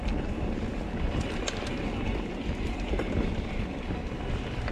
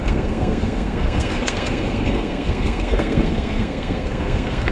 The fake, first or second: second